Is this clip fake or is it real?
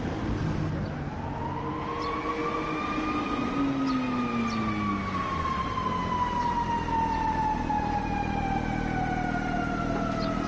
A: real